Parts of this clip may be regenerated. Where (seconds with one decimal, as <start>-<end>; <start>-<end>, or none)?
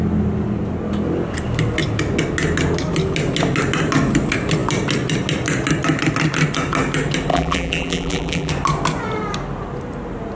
7.3-8.5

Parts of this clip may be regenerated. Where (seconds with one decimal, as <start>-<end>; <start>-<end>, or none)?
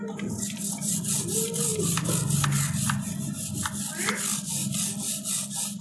none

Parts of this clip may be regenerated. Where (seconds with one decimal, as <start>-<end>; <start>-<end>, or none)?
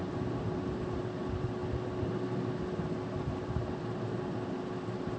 none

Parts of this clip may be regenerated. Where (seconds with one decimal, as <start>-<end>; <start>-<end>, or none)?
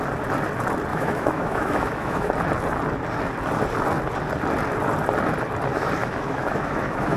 0.9-2.3; 6.0-7.2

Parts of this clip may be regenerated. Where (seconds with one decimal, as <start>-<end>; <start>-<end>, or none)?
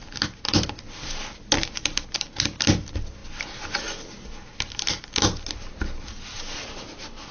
none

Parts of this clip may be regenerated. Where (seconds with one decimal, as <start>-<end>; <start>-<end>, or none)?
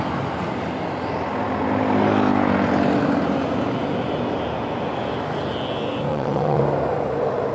6.1-6.6